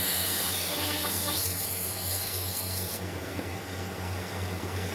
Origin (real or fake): fake